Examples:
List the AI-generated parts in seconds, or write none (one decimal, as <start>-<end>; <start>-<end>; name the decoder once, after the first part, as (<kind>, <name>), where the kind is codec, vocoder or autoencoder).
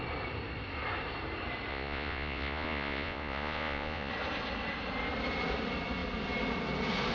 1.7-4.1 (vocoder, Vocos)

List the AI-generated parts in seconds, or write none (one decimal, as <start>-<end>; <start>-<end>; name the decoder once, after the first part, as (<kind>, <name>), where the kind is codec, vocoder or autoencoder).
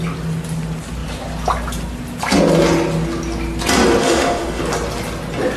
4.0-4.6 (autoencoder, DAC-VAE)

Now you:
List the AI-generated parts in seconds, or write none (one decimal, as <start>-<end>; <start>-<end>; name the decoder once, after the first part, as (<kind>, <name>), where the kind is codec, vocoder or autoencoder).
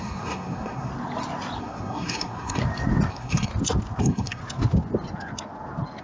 0.0-0.9 (codec, SNAC); 1.6-2.6; 3.1-3.5; 4.0-4.4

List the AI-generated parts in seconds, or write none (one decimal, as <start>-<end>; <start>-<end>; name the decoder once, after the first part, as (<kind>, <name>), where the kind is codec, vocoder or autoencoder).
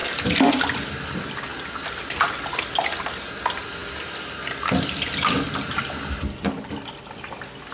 none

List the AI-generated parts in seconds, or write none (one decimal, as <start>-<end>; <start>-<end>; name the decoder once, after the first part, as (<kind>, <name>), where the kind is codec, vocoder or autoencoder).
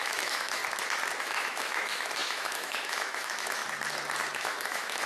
0.0-0.6 (autoencoder, DAC-VAE); 1.2-3.6; 4.3-5.1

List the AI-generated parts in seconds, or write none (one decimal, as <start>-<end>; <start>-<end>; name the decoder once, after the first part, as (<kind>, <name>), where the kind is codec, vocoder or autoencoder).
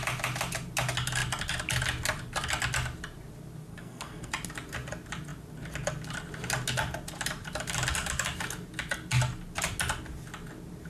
3.7-4.3 (codec, SNAC)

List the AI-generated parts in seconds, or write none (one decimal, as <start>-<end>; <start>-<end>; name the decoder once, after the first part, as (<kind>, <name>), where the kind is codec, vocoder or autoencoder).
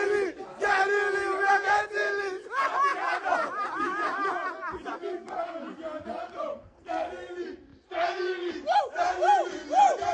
6.5-7.1 (codec, SNAC)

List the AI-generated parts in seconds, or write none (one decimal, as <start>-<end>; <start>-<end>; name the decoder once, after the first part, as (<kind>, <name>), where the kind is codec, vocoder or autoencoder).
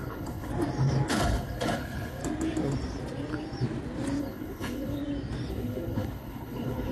0.0-0.5 (codec, HILCodec); 1.1-2.2; 4.2-5.0; 5.5-6.9